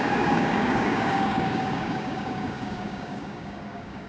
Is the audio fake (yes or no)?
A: yes